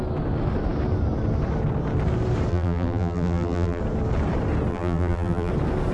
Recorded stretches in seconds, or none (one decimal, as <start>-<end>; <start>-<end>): 0.0-2.5; 3.8-4.7; 5.5-5.9